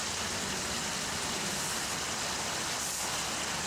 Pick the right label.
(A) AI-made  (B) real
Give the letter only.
B